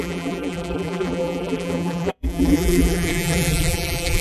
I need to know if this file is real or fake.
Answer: fake